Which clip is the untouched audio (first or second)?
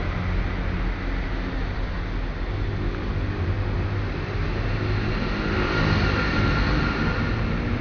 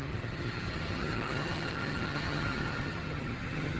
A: first